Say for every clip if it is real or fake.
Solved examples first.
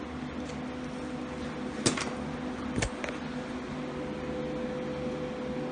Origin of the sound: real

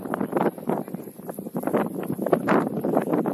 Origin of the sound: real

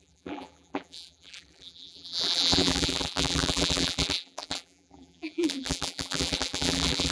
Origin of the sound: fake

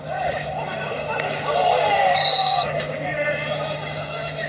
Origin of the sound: fake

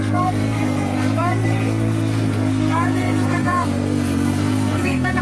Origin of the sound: fake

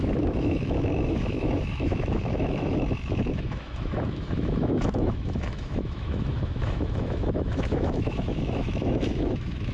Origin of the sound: fake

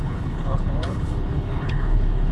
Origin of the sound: fake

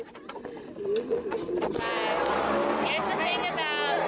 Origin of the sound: real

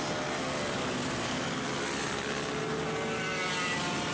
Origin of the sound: real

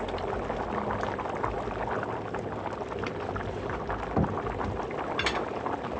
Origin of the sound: real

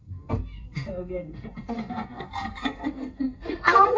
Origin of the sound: fake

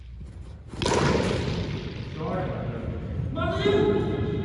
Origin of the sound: real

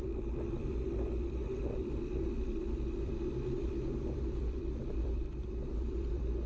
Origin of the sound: fake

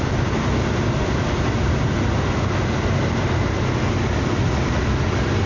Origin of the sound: real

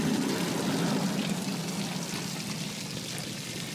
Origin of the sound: real